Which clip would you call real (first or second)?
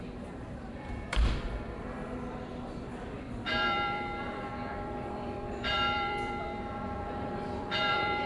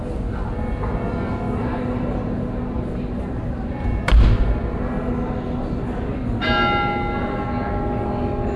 second